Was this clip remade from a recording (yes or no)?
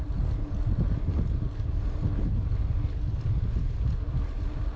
no